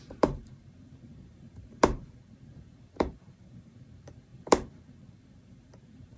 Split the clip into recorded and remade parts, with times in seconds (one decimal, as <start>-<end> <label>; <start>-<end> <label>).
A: 0.0-6.2 remade